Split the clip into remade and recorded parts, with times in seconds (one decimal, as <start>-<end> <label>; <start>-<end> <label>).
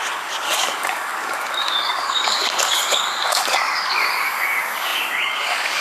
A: 0.0-5.8 remade